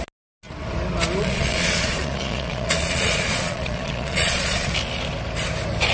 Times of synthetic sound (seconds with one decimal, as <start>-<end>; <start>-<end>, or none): 1.2-4.7